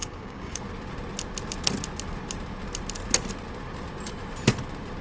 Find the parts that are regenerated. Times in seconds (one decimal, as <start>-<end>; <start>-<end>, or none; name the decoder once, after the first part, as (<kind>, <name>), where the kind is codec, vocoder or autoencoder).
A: 0.0-0.6 (codec, DAC)